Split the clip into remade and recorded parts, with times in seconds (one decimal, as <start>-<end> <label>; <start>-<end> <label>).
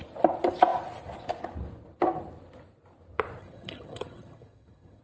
0.0-3.4 recorded; 3.4-5.0 remade